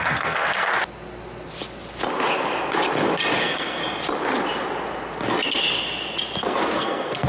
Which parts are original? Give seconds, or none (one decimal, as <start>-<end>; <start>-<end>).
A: 0.7-3.4; 3.8-6.4